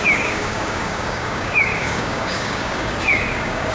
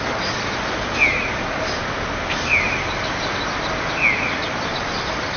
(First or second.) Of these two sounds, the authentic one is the second